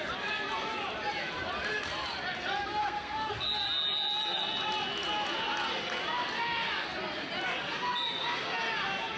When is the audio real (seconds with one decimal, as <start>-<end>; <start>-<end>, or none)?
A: 0.0-2.8; 3.3-9.2